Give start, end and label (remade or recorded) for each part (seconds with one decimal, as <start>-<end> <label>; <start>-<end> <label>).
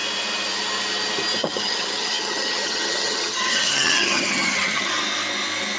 0.0-1.4 recorded; 1.4-4.9 remade; 4.9-5.8 recorded